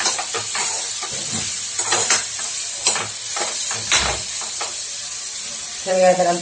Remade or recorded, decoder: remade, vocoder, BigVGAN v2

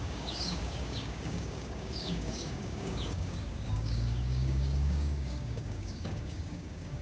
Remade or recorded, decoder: remade, codec, DAC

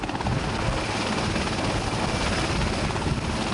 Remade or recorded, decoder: recorded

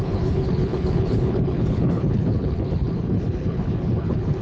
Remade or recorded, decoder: remade, codec, HILCodec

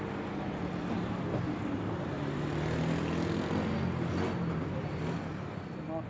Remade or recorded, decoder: recorded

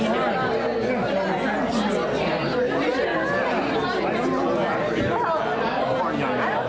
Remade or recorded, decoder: recorded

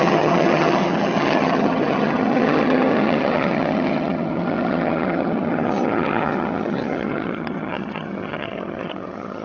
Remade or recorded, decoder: remade, vocoder, HiFi-GAN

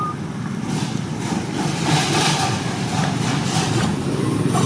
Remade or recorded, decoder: recorded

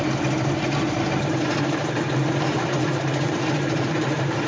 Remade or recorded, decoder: remade, vocoder, BigVGAN v2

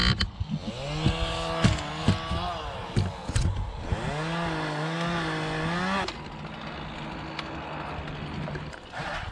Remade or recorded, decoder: recorded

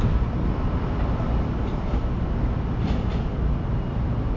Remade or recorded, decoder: recorded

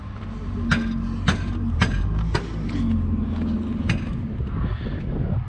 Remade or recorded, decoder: recorded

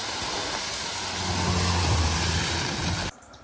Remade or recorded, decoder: recorded